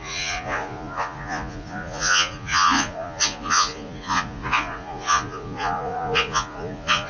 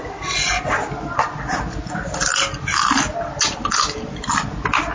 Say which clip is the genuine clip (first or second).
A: second